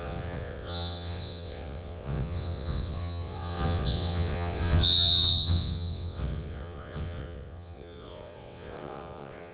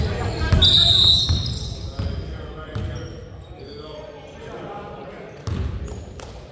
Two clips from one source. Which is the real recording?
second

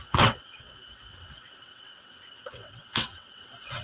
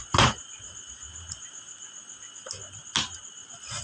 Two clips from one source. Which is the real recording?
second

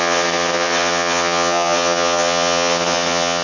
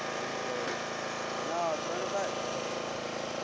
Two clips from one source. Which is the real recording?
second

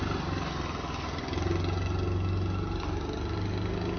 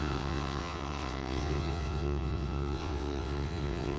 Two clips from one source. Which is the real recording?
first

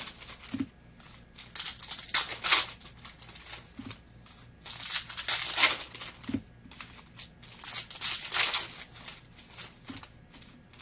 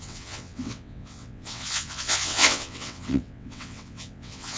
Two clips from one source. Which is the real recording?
first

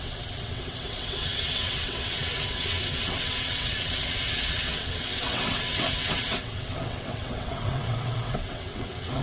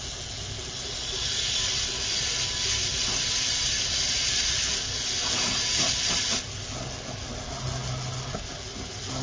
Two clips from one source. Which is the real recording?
second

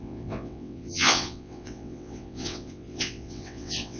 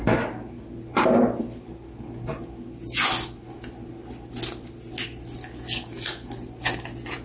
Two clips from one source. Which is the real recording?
second